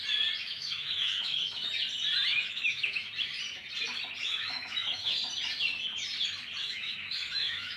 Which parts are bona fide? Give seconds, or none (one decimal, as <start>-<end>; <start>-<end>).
0.0-0.4; 1.7-2.3; 3.1-4.2; 5.2-6.6